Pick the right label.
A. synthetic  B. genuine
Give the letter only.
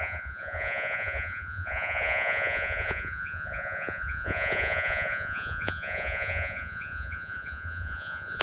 A